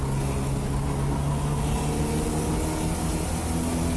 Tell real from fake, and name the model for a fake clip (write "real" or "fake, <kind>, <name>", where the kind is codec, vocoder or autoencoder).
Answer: real